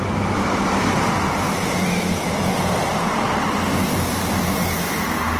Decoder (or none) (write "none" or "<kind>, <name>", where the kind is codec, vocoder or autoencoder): none